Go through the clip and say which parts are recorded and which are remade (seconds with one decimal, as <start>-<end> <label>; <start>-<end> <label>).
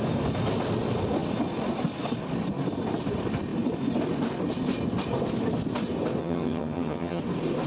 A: 0.0-6.2 recorded; 6.2-7.2 remade; 7.2-7.7 recorded